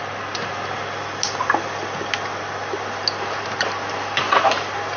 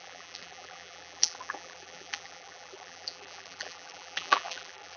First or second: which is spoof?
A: second